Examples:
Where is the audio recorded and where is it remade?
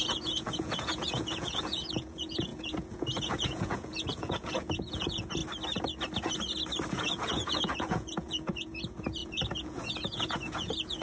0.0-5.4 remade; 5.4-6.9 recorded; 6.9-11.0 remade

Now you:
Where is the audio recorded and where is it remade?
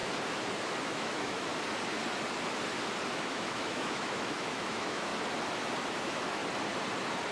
0.0-0.8 recorded; 0.8-1.5 remade; 1.5-3.1 recorded; 3.1-5.1 remade; 5.1-6.0 recorded; 6.0-6.4 remade; 6.4-7.3 recorded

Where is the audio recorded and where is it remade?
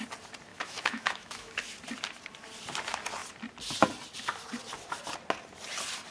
0.0-0.5 recorded; 0.5-1.6 remade; 1.6-6.1 recorded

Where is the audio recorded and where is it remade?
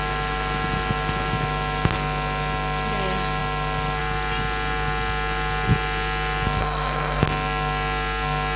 0.0-6.6 recorded; 6.6-7.2 remade; 7.2-8.6 recorded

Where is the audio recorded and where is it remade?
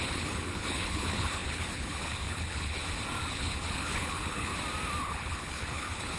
0.0-2.8 remade; 2.8-3.3 recorded; 3.3-4.5 remade; 4.5-5.0 recorded; 5.0-6.2 remade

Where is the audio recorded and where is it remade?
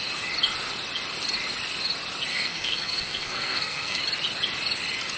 0.0-2.3 recorded; 2.3-4.0 remade; 4.0-5.2 recorded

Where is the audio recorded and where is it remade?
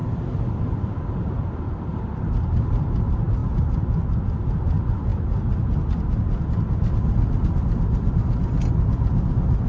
0.0-2.3 remade; 2.3-3.4 recorded; 3.4-4.2 remade; 4.2-9.7 recorded